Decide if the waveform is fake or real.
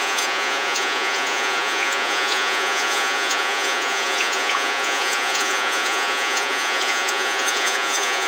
fake